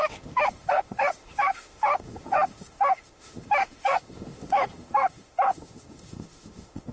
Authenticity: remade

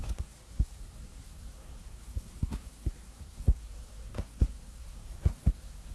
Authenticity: remade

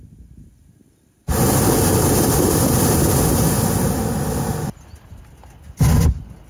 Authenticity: recorded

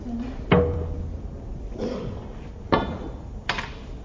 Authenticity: recorded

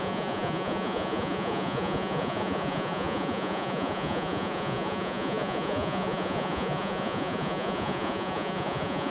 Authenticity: remade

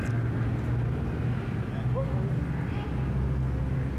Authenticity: recorded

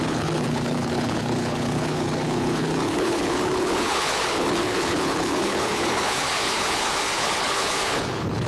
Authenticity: remade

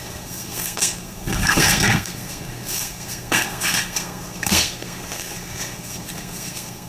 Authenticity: remade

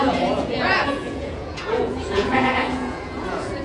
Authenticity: remade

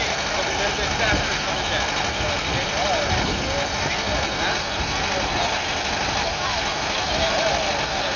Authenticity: recorded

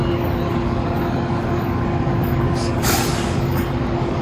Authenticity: remade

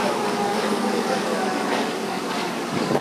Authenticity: remade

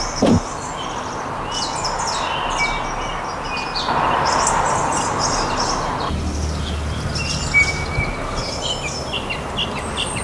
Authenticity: recorded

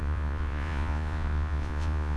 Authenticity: remade